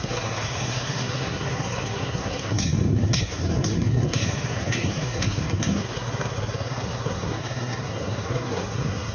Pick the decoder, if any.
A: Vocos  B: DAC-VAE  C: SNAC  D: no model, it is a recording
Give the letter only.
C